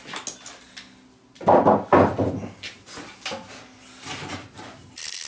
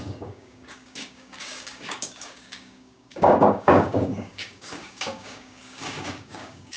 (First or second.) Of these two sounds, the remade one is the second